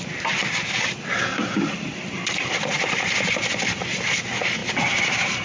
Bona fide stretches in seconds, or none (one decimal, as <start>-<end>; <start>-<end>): 0.0-5.4